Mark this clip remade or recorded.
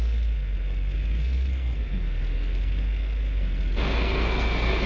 remade